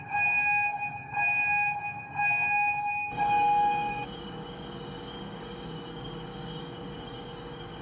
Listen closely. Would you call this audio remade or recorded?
remade